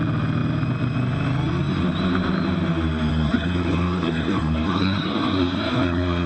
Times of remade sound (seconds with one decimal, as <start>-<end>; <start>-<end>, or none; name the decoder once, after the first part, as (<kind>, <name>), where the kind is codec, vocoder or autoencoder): 3.1-6.3 (codec, SNAC)